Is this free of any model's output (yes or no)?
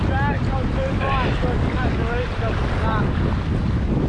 yes